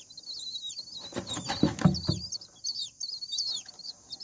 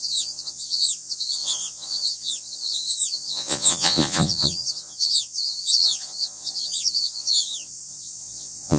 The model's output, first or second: second